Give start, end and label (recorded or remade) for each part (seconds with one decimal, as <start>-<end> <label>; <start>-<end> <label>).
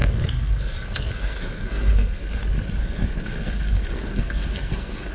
0.0-2.4 remade; 2.4-2.8 recorded; 2.8-5.1 remade